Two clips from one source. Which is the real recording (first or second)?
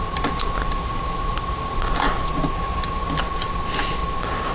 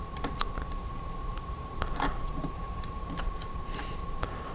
first